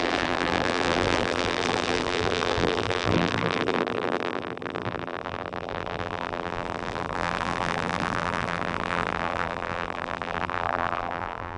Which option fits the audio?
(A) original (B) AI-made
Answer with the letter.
B